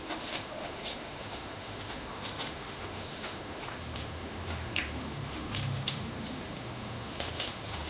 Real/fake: fake